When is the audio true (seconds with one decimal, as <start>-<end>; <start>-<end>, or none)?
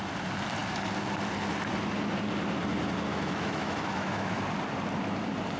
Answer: 0.0-3.1; 4.4-5.6